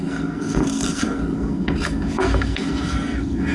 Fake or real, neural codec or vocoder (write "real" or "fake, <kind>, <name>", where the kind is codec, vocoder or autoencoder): fake, codec, SNAC